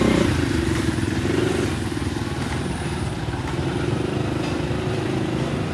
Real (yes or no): no